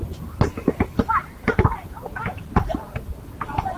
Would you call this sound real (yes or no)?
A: no